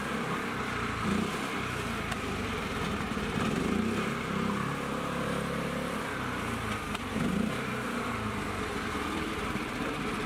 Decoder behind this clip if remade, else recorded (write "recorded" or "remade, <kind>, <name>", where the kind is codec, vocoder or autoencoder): remade, vocoder, BigVGAN v2